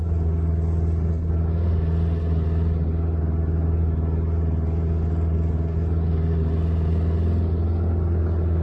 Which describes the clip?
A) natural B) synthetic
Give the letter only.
A